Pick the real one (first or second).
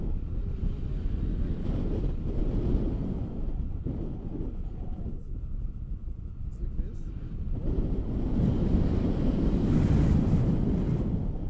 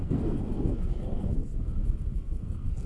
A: first